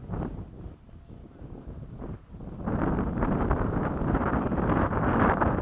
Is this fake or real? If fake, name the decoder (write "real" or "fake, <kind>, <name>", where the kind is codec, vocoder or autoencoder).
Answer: real